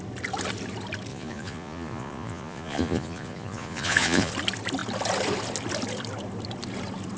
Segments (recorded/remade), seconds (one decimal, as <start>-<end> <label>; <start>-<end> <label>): 0.0-1.1 recorded; 1.1-4.3 remade; 4.3-7.2 recorded

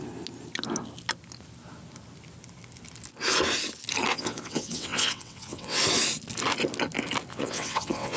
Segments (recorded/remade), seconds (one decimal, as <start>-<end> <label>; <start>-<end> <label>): 0.0-4.1 recorded; 4.1-5.8 remade; 5.8-7.3 recorded; 7.3-8.2 remade